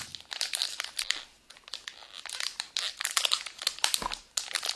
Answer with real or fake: real